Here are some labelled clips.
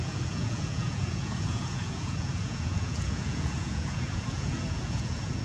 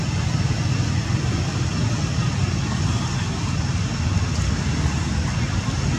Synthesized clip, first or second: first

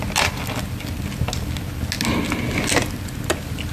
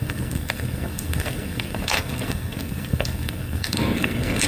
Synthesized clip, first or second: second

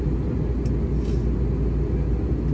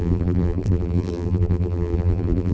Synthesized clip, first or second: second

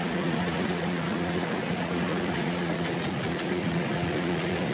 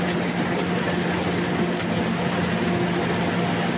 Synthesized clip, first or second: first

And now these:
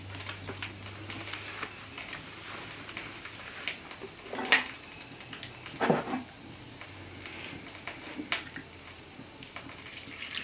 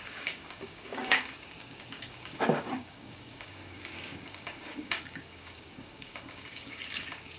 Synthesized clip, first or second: second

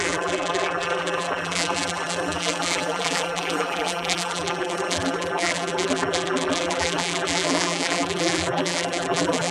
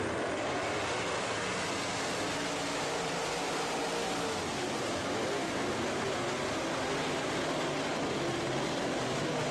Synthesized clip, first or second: first